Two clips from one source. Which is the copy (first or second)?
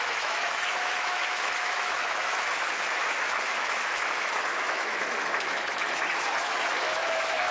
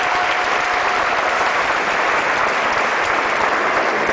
first